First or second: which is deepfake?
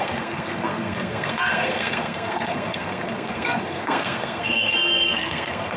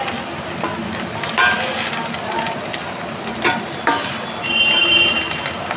first